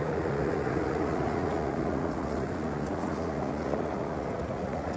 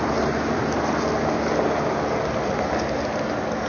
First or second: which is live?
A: second